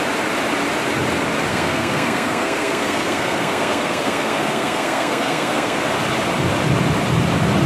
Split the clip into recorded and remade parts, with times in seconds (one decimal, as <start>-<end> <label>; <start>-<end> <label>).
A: 0.0-1.5 recorded; 1.5-5.8 remade; 5.8-7.7 recorded